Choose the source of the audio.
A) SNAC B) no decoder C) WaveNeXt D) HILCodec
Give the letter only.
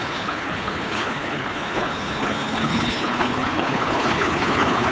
D